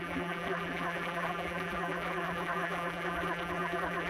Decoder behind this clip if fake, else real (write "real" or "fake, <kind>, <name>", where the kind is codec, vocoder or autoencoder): fake, vocoder, BigVGAN v2